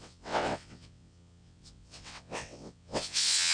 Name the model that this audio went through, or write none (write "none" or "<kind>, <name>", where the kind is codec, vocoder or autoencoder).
vocoder, WaveNeXt